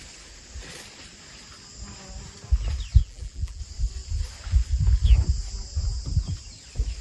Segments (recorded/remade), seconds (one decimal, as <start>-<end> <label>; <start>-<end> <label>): 0.0-3.0 recorded; 3.0-3.6 remade; 3.6-7.0 recorded